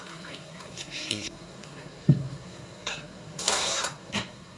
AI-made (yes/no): yes